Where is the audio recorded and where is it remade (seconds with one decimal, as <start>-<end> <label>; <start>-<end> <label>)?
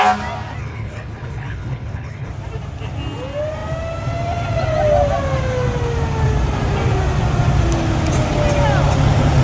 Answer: 0.0-0.6 recorded; 0.6-2.3 remade; 2.3-9.4 recorded